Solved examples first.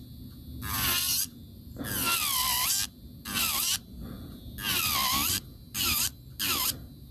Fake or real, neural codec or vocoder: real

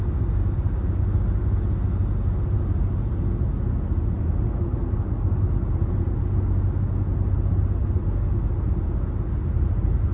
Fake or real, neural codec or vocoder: real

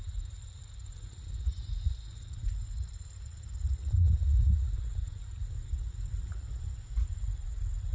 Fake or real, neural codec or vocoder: fake, vocoder, Vocos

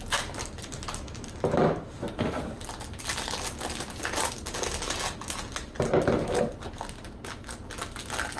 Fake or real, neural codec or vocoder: real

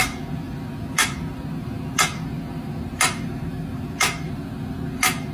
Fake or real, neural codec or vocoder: real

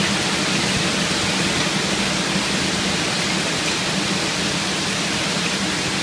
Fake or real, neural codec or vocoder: real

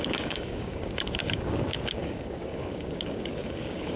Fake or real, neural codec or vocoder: fake, codec, DAC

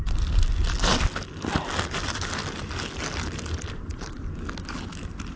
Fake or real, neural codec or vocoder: real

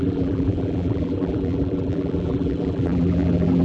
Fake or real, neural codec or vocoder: fake, vocoder, BigVGAN v2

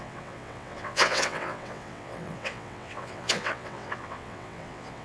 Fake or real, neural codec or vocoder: fake, vocoder, WaveNeXt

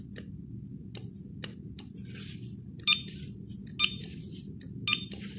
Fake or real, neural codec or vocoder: real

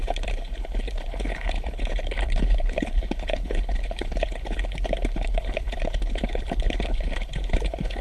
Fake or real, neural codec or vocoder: fake, codec, HILCodec